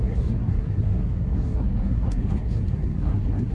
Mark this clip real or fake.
fake